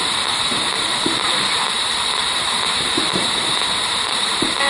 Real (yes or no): no